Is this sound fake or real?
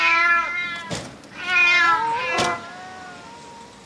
real